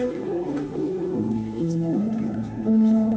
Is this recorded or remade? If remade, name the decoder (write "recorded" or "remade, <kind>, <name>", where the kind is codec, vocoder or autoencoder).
remade, codec, SNAC